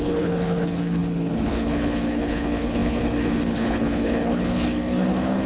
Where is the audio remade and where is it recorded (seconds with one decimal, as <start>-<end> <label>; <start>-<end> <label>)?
0.0-5.5 remade